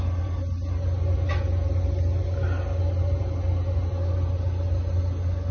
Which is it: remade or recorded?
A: recorded